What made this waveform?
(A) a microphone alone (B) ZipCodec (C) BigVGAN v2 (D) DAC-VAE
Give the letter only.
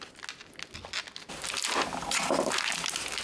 A